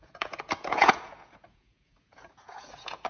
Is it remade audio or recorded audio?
remade